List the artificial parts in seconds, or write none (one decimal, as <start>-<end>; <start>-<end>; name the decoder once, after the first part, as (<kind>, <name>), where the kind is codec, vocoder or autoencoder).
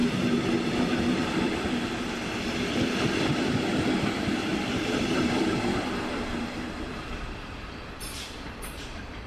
0.8-9.3 (vocoder, BigVGAN v2)